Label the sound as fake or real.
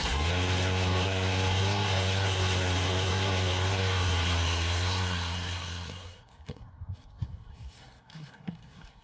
fake